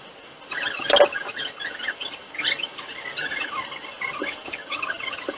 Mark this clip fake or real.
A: real